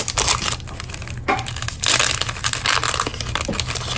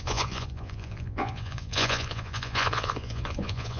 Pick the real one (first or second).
first